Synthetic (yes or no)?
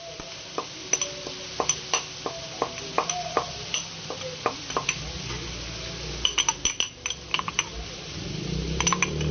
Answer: no